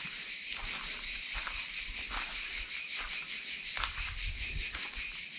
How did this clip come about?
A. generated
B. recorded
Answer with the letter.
A